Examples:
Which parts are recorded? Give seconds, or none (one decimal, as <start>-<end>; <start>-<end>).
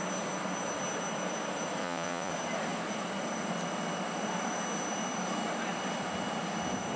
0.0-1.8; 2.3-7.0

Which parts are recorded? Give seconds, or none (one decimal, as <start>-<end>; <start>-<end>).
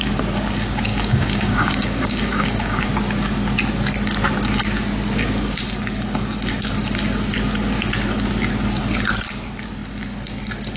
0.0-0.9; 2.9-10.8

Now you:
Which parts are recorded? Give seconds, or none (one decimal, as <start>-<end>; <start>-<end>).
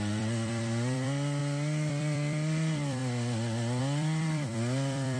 1.4-1.9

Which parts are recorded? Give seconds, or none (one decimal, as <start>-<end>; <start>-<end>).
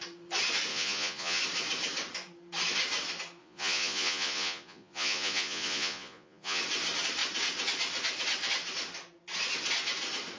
0.0-0.7; 1.4-3.4; 6.6-10.4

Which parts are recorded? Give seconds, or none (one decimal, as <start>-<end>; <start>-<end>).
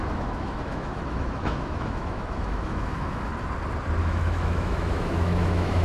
3.3-4.0